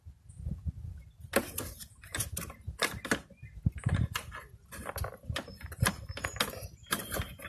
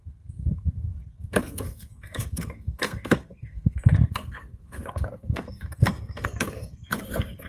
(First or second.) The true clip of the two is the first